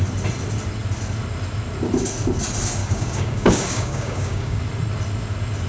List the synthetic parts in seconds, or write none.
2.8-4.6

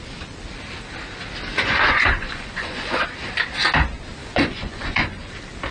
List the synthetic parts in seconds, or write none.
1.5-3.0; 4.2-5.3

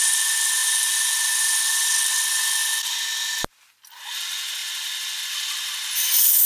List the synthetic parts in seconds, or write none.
none

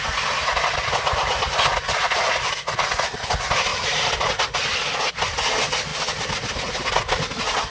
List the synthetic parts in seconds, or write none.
none

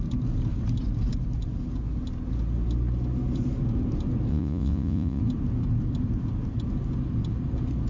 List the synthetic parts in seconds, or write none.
4.3-5.2

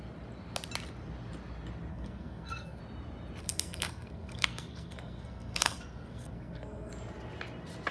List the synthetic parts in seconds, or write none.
1.9-2.8; 3.4-6.9

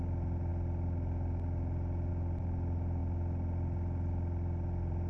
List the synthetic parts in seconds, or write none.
none